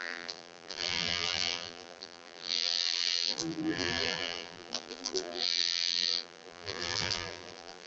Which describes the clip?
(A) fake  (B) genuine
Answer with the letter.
A